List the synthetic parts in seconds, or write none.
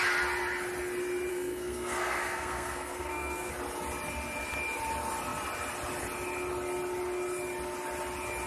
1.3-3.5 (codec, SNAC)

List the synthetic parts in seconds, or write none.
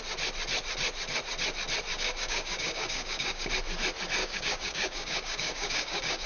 1.9-3.5 (codec, DAC); 4.2-6.3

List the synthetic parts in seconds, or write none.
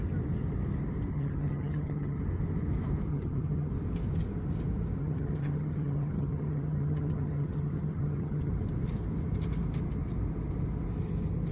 1.1-2.2 (vocoder, HiFi-GAN); 3.1-3.7; 5.0-8.5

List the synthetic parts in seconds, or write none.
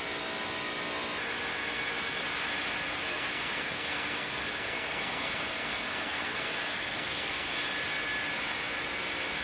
1.5-2.2 (codec, SNAC); 3.1-7.5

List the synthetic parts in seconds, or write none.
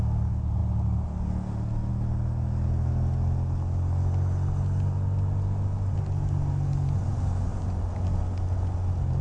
none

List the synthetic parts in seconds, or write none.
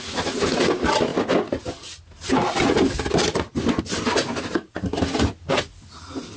none